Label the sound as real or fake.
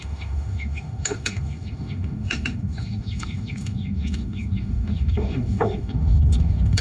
fake